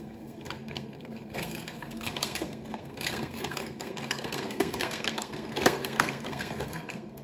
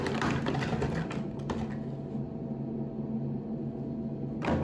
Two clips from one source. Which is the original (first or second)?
second